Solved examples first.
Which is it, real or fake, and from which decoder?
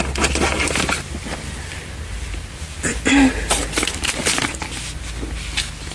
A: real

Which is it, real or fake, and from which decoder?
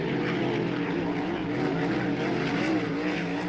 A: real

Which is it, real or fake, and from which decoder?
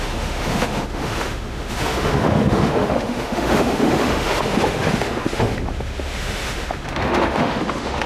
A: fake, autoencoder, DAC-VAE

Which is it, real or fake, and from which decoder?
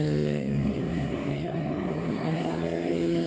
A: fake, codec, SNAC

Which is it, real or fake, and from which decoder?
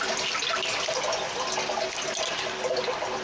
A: real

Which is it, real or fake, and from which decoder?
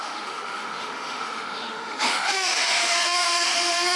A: fake, autoencoder, DAC-VAE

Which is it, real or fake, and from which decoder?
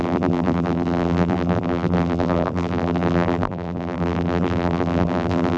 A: fake, vocoder, BigVGAN v2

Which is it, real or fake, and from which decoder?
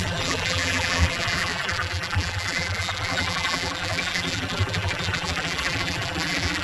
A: fake, vocoder, BigVGAN v2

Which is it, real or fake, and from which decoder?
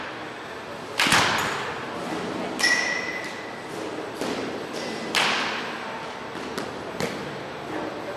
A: real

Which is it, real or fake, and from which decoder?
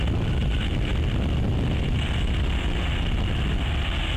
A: real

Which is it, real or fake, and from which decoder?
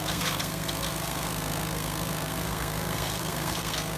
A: fake, codec, SNAC